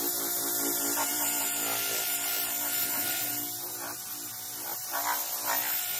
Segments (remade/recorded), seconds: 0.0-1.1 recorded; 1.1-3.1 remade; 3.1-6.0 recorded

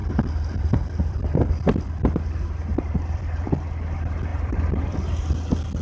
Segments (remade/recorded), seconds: 0.0-3.5 remade; 3.5-4.3 recorded; 4.3-5.3 remade; 5.3-5.8 recorded

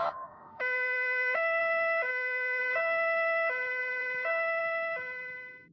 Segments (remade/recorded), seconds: 0.0-1.6 remade; 1.6-2.1 recorded; 2.1-2.6 remade; 2.6-5.7 recorded

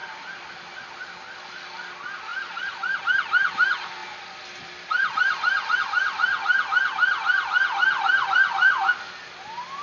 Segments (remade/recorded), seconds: 0.0-0.5 remade; 0.5-2.3 recorded; 2.3-3.0 remade; 3.0-4.0 recorded; 4.0-5.8 remade; 5.8-9.8 recorded